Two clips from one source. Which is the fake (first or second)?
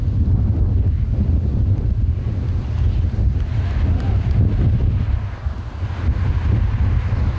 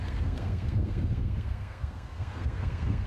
second